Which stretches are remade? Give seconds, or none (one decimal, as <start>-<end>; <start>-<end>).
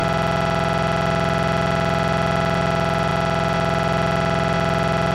none